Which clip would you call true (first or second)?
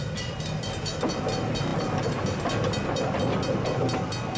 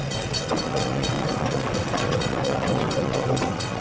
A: first